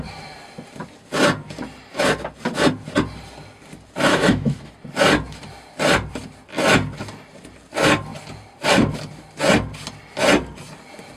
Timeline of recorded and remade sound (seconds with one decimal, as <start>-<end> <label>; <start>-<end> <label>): 0.0-4.1 recorded; 4.1-4.7 remade; 4.7-11.2 recorded